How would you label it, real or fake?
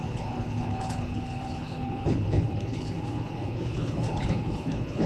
fake